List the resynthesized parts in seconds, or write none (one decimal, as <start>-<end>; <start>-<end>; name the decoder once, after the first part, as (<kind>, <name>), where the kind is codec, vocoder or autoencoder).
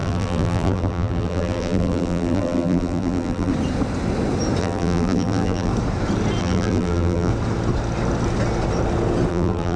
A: 0.0-3.5 (vocoder, BigVGAN v2); 4.6-5.7; 6.4-7.3; 9.3-9.8